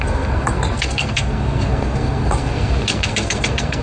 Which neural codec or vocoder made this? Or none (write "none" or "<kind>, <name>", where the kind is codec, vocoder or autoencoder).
codec, SNAC